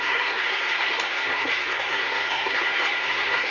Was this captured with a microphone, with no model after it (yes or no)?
no